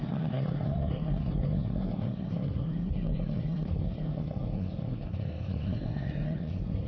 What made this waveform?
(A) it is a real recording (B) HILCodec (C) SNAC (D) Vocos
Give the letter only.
C